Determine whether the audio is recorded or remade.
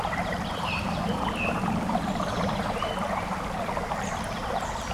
remade